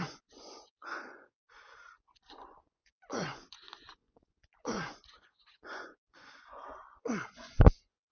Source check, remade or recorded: remade